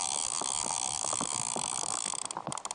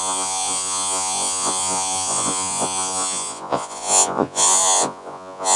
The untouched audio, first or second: first